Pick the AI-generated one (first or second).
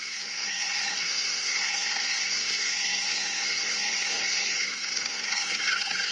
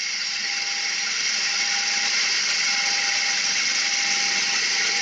first